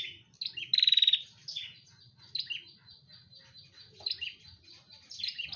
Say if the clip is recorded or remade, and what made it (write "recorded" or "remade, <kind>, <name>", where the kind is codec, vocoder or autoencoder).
recorded